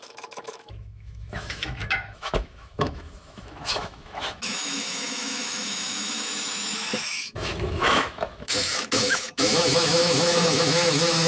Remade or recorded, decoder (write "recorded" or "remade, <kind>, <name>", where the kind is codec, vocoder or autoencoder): remade, autoencoder, DAC-VAE